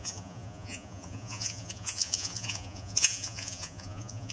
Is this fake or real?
fake